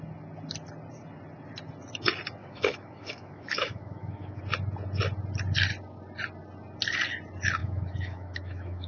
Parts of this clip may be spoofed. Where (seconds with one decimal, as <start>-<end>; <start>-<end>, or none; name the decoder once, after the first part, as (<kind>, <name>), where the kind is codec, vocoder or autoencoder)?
2.4-4.4 (autoencoder, DAC-VAE); 7.6-8.9